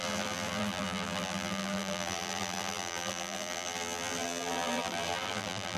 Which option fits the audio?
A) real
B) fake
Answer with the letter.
B